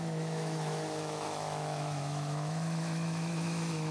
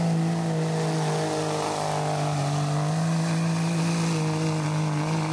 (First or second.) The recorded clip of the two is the second